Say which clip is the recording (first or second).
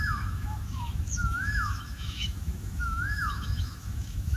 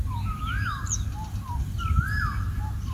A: second